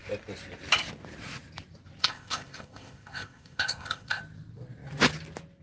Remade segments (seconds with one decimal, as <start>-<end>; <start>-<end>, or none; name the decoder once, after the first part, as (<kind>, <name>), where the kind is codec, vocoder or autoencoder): 2.0-4.2 (codec, ZipCodec)